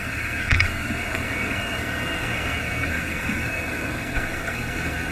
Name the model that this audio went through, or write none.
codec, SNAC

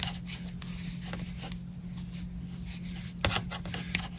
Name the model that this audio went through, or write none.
none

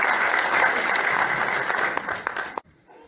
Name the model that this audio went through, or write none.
none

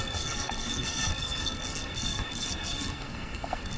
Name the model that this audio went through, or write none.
codec, SNAC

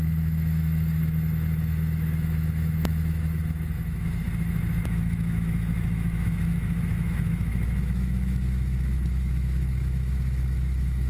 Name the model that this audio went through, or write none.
autoencoder, DAC-VAE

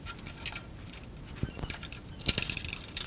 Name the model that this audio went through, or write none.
vocoder, BigVGAN v2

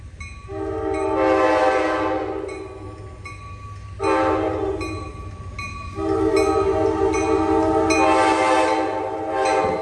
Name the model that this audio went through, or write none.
none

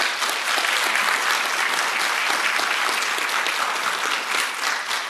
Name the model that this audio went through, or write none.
none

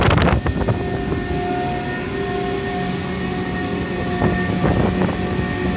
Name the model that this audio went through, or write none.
none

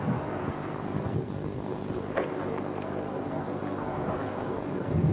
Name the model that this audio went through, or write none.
codec, SNAC